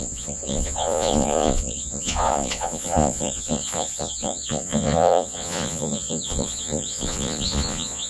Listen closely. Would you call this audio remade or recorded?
remade